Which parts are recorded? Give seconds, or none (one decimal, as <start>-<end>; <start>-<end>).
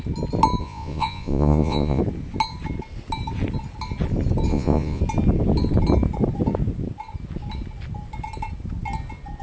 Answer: 0.0-0.6; 2.0-4.5; 5.0-9.4